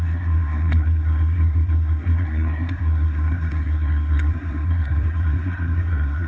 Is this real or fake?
fake